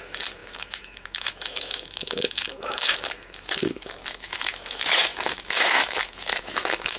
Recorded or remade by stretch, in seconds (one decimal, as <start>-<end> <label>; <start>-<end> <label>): 0.0-7.0 remade